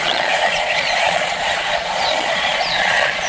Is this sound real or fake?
fake